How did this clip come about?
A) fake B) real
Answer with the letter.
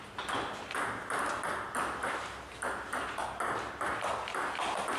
B